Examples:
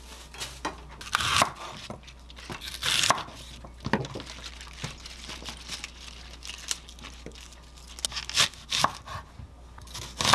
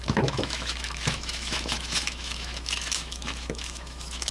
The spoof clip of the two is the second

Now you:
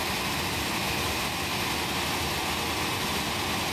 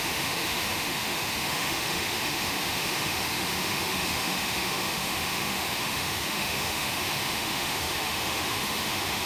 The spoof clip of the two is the second